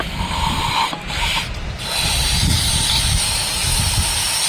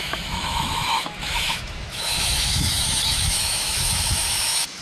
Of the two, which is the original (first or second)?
first